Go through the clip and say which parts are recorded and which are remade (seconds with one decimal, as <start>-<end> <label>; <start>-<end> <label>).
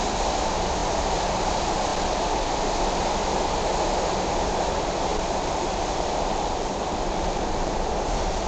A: 0.0-5.1 recorded; 5.1-7.7 remade; 7.7-8.5 recorded